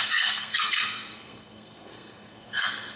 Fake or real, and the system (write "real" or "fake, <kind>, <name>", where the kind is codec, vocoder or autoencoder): fake, codec, SNAC